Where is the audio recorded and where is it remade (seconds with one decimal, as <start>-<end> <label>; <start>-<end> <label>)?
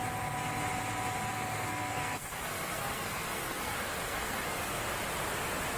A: 0.0-1.3 recorded; 1.3-4.8 remade; 4.8-5.8 recorded